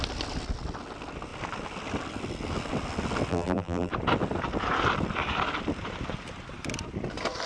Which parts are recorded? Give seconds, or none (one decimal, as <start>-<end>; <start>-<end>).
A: 0.0-3.3; 3.9-7.5